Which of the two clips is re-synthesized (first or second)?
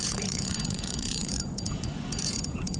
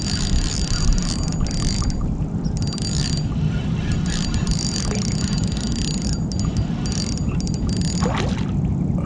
first